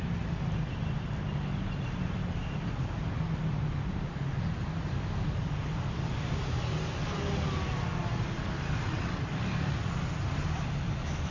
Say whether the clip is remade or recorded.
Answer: recorded